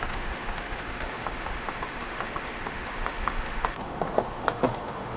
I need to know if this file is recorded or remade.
remade